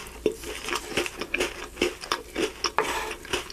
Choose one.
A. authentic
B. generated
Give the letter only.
A